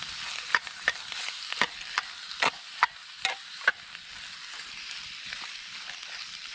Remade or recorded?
remade